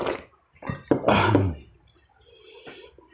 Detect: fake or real real